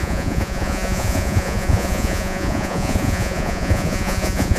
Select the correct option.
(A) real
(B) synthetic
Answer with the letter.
B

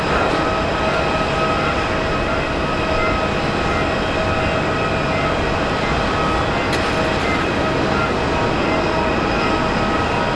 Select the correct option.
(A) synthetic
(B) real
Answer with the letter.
B